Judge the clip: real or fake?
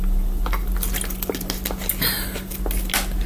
real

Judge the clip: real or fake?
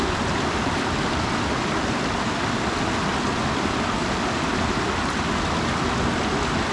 real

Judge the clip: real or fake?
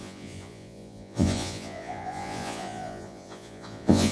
fake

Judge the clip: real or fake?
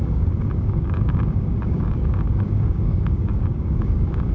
fake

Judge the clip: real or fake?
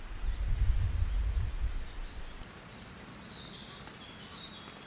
real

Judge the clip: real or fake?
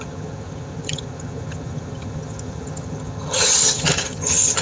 fake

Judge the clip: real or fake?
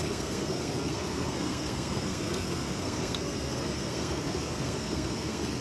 fake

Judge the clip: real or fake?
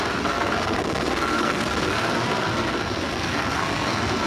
fake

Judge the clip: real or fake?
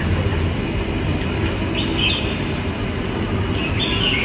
real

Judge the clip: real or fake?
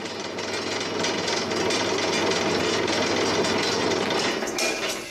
real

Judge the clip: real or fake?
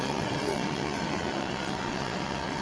fake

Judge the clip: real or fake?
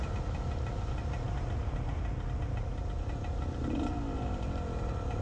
real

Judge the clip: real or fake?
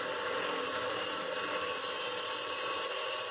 real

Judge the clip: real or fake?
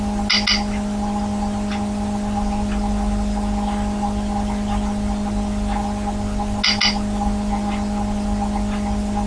real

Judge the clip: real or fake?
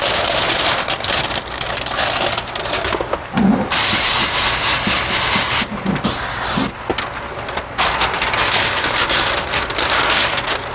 real